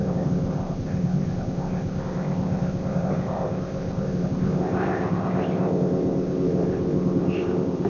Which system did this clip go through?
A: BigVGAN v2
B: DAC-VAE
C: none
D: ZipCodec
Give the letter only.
D